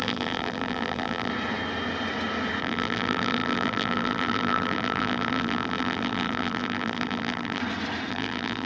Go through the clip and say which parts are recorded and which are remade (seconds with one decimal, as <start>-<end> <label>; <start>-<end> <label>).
0.0-1.3 remade; 1.3-2.6 recorded; 2.6-7.6 remade; 7.6-8.1 recorded; 8.1-8.7 remade